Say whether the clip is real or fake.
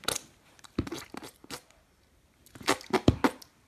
real